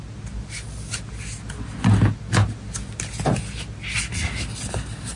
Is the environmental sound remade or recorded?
recorded